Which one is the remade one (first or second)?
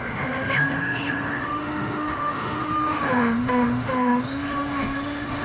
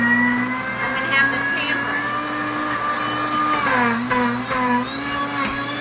first